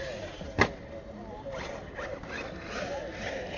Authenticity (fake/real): real